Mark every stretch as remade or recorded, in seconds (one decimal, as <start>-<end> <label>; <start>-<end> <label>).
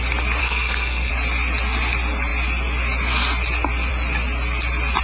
0.0-0.4 recorded; 0.4-1.1 remade; 1.1-5.0 recorded